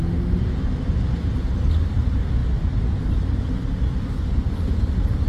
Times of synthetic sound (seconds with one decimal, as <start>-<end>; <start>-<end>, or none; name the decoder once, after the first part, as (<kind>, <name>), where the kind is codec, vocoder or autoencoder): none